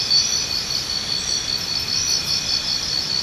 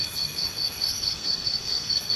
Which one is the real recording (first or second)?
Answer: first